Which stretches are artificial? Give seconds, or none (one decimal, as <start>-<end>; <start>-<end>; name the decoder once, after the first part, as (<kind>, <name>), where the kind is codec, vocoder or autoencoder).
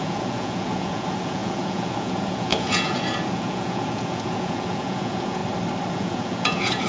0.0-5.4 (vocoder, Vocos); 5.9-6.9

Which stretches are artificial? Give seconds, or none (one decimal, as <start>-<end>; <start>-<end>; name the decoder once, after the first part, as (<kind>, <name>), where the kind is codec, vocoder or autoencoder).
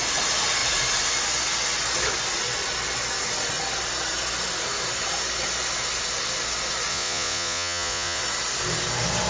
6.9-8.2 (vocoder, Vocos)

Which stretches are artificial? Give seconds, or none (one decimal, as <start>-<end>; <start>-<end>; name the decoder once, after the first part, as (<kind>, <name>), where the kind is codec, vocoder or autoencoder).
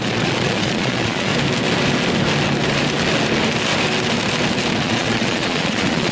0.0-1.3 (vocoder, Vocos); 4.8-6.1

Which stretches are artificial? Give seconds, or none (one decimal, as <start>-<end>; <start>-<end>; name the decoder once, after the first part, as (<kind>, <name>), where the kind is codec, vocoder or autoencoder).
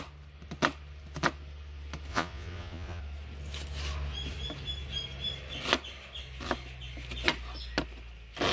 2.1-3.0 (vocoder, Vocos)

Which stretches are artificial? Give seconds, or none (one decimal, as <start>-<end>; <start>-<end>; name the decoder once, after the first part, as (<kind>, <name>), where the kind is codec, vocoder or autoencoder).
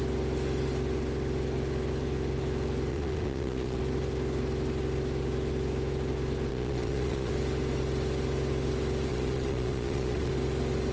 2.9-3.8 (vocoder, Vocos); 6.5-7.3; 9.1-10.3